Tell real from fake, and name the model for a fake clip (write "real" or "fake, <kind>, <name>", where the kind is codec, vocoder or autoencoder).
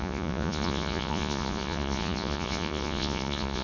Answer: fake, vocoder, Vocos